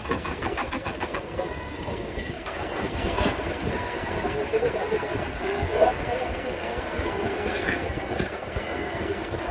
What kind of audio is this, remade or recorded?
remade